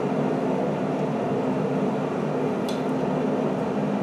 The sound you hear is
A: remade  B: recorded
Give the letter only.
B